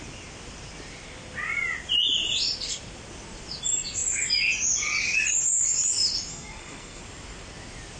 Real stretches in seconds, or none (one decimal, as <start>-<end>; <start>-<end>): 0.0-6.3; 7.0-8.0